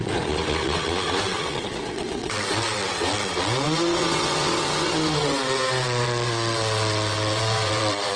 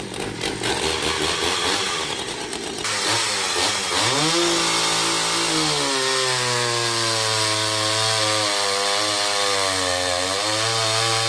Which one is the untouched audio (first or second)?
second